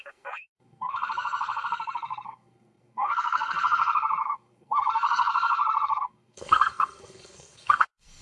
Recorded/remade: remade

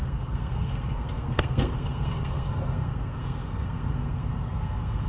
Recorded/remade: remade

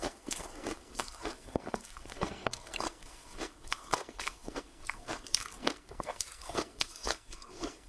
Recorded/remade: remade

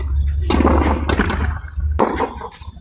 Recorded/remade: recorded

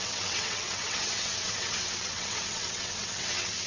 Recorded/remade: remade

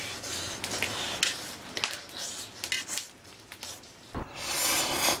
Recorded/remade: recorded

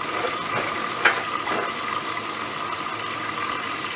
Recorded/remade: recorded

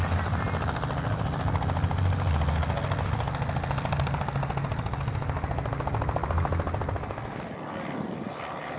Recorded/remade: recorded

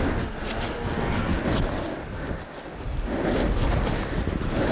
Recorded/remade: recorded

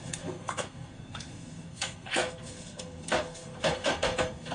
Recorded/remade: remade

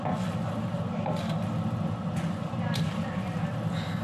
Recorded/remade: recorded